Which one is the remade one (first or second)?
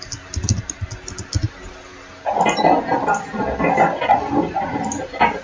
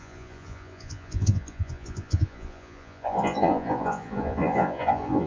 second